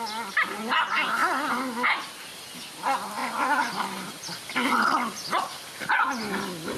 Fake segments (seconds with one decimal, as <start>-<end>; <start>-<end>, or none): 3.2-4.1

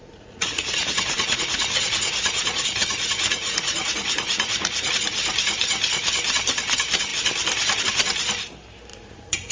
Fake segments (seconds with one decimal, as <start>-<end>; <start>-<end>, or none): 0.0-4.9; 8.9-9.5

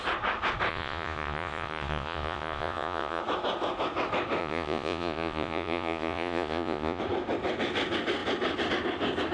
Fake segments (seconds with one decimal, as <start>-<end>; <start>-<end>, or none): 0.7-3.2; 4.4-7.0

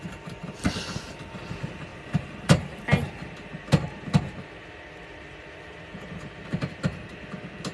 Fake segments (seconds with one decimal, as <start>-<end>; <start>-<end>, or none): 1.9-2.8

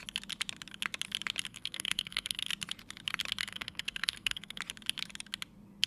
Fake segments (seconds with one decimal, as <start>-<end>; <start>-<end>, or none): 1.5-2.5; 3.4-4.6

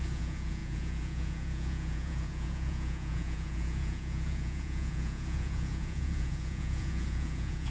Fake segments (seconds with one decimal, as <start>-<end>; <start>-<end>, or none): 0.0-7.7

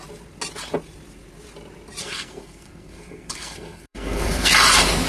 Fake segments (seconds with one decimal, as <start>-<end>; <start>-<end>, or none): 2.0-4.5

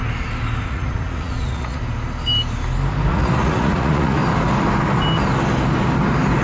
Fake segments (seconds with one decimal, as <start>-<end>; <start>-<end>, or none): 0.6-1.8; 3.1-4.2